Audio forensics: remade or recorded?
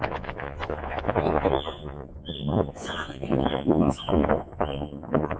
remade